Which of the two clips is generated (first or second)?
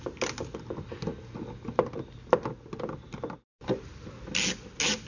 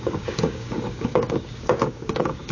second